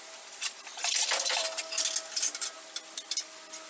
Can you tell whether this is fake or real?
real